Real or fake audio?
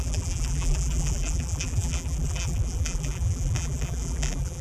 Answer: fake